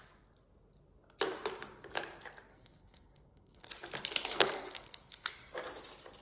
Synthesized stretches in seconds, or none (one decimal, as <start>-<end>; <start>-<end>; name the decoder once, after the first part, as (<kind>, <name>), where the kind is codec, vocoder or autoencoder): 2.5-3.7 (codec, SNAC); 4.2-5.5